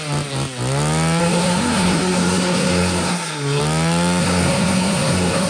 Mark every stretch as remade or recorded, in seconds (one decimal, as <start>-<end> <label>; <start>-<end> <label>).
0.0-1.2 recorded; 1.2-3.6 remade; 3.6-4.2 recorded; 4.2-5.5 remade